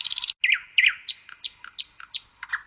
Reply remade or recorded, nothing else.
recorded